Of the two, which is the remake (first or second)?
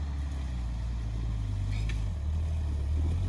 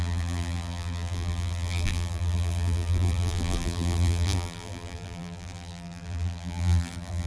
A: second